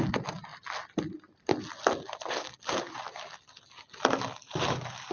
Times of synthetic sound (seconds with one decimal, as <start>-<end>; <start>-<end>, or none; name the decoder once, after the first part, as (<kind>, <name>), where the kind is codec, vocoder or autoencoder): none